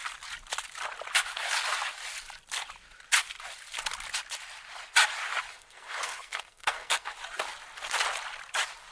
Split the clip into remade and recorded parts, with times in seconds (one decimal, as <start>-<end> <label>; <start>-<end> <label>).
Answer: 0.0-5.5 recorded; 5.5-7.1 remade; 7.1-8.9 recorded